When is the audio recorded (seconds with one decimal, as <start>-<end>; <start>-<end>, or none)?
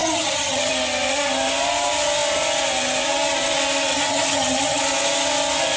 0.7-3.9; 4.8-5.8